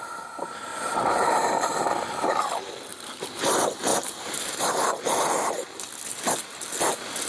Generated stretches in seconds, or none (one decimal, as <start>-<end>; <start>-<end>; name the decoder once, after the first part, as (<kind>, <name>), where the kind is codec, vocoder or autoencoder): 0.7-1.8 (vocoder, BigVGAN v2); 2.9-3.4; 3.9-5.5